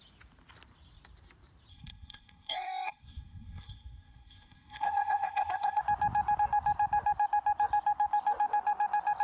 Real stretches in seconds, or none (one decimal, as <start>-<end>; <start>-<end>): 0.0-1.7; 5.8-9.2